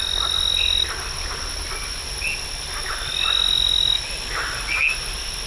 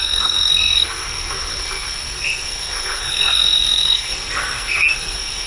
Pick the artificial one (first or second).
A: second